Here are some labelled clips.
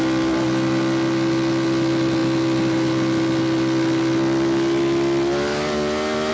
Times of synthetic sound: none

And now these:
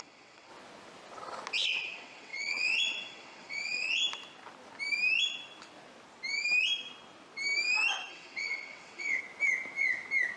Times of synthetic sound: 0.0-0.5 (vocoder, WaveNeXt); 1.7-4.0; 8.1-9.2